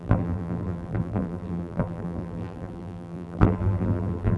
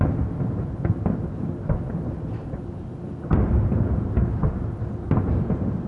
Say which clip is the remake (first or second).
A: first